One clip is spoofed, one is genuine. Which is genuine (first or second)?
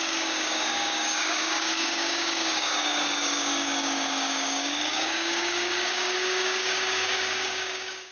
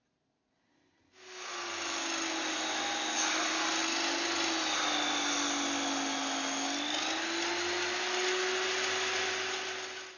second